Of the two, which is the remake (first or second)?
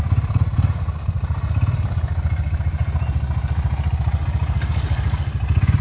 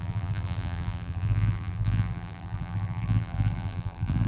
second